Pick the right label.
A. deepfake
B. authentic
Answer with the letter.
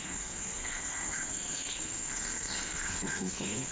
A